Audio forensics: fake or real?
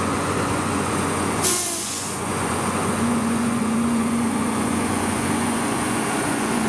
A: fake